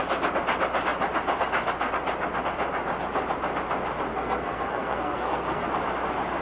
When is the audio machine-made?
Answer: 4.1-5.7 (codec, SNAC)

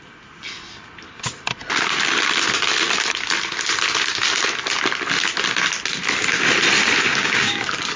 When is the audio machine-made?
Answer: 7.1-7.6 (codec, DAC)

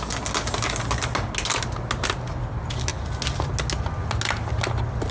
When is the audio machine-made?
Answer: none

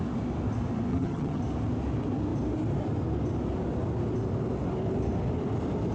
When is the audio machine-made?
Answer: 0.9-1.4 (vocoder, HiFi-GAN)

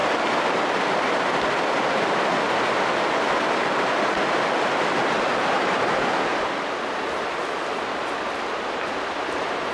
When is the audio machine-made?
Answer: 0.0-2.3 (vocoder, BigVGAN v2)

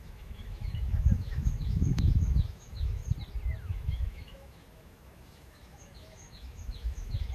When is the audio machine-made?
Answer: 0.0-3.0 (autoencoder, DAC-VAE); 3.6-7.3